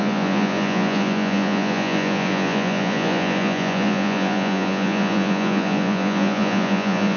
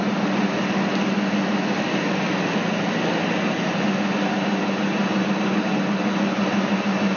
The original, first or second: second